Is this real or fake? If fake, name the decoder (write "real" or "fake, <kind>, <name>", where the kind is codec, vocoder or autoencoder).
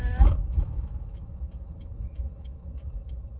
fake, autoencoder, DAC-VAE